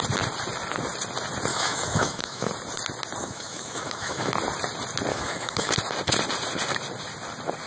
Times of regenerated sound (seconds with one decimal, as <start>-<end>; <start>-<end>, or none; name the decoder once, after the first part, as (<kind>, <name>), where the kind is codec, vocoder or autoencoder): 1.5-2.5 (autoencoder, DAC-VAE); 3.2-4.3; 5.1-5.7